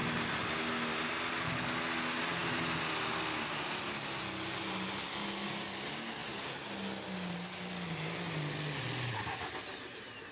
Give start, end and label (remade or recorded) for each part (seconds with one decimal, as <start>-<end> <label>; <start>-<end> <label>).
0.0-6.2 recorded; 6.2-6.7 remade; 6.7-10.3 recorded